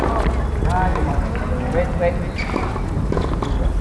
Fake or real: real